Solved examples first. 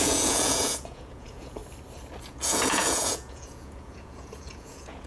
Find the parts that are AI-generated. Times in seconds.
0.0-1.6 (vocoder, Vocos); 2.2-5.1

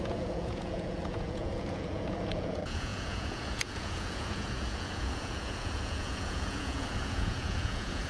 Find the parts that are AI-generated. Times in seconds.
0.0-8.1 (vocoder, Vocos)

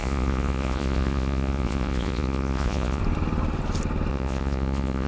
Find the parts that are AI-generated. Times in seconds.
0.0-3.0 (vocoder, Vocos); 4.1-5.1

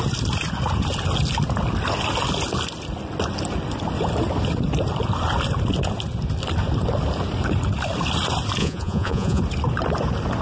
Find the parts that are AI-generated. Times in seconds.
8.6-9.4 (vocoder, Vocos)